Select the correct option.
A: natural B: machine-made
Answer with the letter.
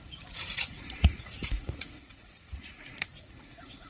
B